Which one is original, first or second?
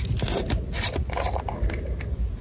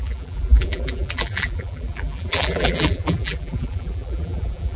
first